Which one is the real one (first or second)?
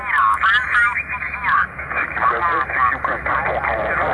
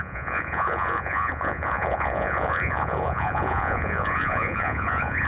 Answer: first